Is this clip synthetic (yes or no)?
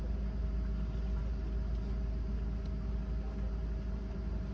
no